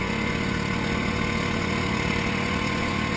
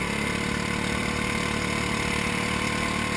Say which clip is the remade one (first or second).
first